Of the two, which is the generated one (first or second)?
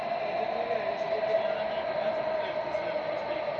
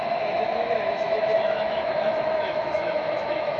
second